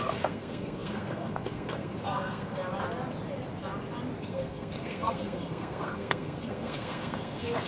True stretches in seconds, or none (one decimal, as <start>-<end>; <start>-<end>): 2.6-4.2